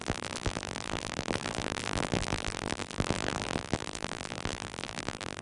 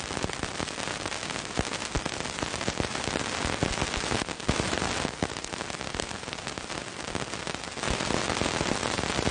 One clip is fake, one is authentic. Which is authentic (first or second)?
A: second